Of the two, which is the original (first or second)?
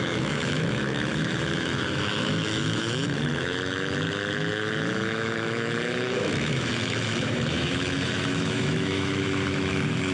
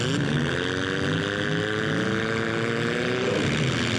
second